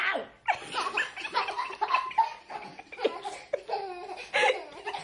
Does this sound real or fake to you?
real